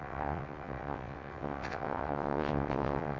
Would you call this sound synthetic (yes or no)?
yes